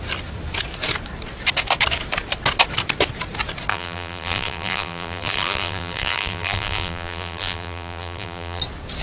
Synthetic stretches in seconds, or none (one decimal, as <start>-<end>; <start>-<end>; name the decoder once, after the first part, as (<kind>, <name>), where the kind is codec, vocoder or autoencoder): 3.7-8.6 (vocoder, BigVGAN v2)